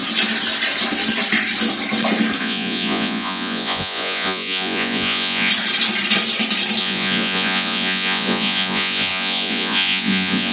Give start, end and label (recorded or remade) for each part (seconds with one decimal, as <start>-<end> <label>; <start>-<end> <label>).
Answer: 0.0-2.4 recorded; 2.4-5.5 remade; 5.5-6.8 recorded; 6.8-10.5 remade